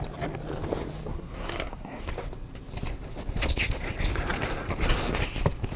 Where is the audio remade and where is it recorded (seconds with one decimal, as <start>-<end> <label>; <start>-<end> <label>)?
0.0-1.1 recorded; 1.1-2.1 remade; 2.1-5.8 recorded